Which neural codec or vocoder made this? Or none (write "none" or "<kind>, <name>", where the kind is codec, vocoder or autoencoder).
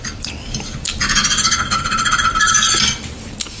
vocoder, BigVGAN v2